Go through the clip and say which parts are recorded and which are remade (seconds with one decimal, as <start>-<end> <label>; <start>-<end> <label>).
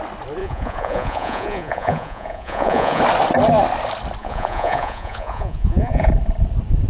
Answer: 0.0-0.4 recorded; 0.4-3.0 remade; 3.0-4.2 recorded; 4.2-6.1 remade; 6.1-6.9 recorded